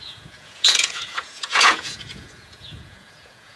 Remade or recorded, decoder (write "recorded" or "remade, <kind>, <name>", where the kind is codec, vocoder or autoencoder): remade, vocoder, Vocos